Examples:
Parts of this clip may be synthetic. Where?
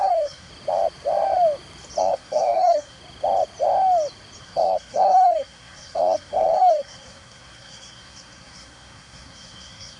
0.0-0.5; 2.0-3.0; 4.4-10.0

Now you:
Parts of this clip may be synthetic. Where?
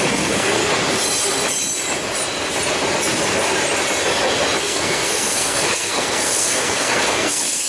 0.0-0.6; 4.6-7.7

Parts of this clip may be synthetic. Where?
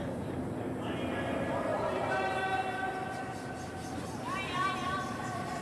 none